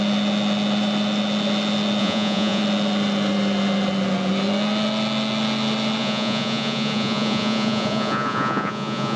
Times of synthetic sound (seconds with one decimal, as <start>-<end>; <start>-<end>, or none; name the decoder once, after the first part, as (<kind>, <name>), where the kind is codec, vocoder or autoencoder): 2.0-2.6 (vocoder, Vocos); 6.0-9.2